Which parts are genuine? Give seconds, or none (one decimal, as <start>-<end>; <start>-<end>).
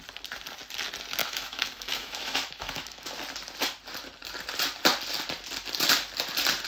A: 0.0-1.2; 3.1-6.7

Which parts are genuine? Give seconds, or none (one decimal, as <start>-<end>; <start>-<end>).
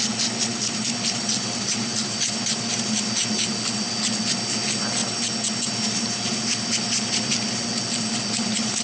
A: 0.0-8.8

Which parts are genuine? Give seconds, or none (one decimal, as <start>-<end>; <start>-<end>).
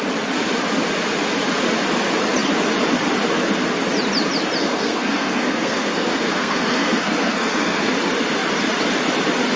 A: 0.0-4.6; 7.9-9.6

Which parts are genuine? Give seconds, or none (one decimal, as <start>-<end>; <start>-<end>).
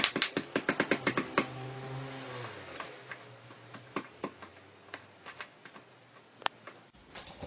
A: 0.0-7.5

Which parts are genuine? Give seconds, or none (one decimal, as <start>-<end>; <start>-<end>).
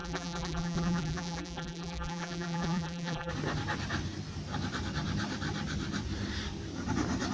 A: 3.3-7.3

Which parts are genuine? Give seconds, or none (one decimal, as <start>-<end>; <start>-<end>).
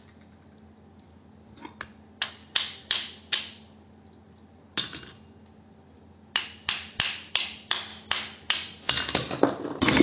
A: 0.0-10.0